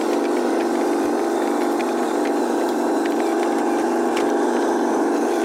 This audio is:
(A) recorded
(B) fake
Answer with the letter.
B